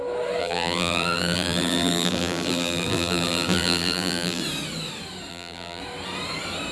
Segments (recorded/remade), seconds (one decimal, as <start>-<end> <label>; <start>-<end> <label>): 0.0-0.4 recorded; 0.4-4.4 remade; 4.4-5.3 recorded; 5.3-5.8 remade; 5.8-6.7 recorded